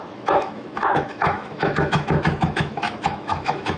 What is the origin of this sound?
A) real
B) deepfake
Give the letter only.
B